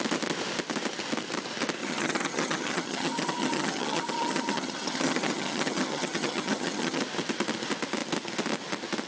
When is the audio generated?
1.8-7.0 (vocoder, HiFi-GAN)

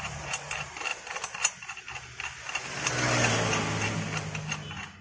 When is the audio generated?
none